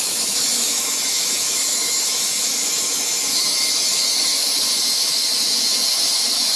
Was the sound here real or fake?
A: fake